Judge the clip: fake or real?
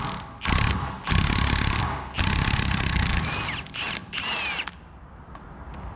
real